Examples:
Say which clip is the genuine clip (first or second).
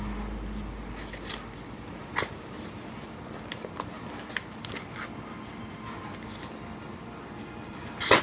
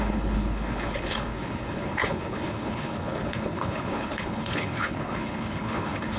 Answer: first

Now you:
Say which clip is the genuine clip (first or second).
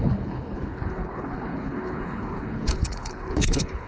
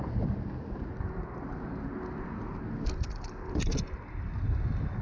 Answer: second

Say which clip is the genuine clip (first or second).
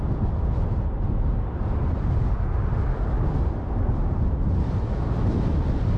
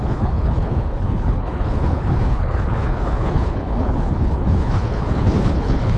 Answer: first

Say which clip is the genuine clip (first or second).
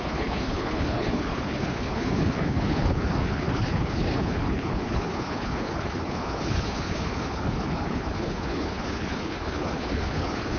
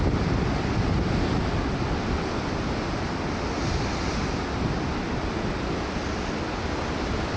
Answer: second